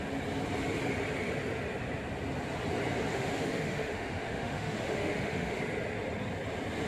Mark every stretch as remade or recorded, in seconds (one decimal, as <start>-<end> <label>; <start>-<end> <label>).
0.0-3.1 recorded; 3.1-5.6 remade; 5.6-6.9 recorded